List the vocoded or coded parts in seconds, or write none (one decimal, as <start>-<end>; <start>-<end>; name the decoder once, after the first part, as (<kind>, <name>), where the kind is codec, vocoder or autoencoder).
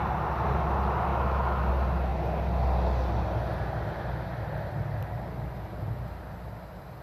1.1-1.7 (autoencoder, DAC-VAE)